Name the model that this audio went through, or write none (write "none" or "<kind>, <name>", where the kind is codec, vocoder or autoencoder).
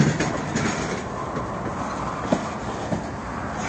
none